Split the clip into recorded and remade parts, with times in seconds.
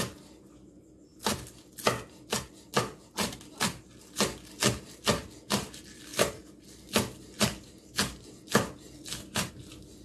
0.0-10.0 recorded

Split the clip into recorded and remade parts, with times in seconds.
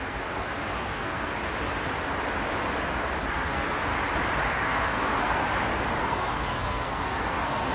0.0-1.3 remade; 1.3-3.2 recorded; 3.2-3.9 remade; 3.9-4.5 recorded; 4.5-5.4 remade; 5.4-6.0 recorded; 6.0-7.7 remade